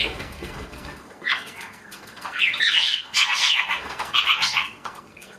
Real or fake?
fake